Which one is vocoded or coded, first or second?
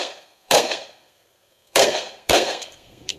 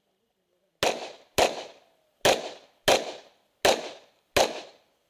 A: first